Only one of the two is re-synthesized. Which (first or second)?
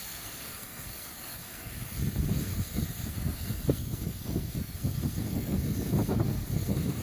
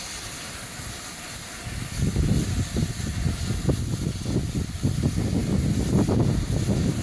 first